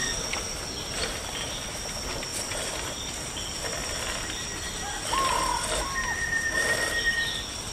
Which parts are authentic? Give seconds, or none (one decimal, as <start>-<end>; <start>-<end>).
0.0-2.3; 3.3-7.7